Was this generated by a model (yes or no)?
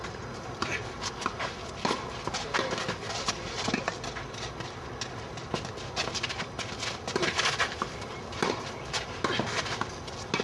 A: no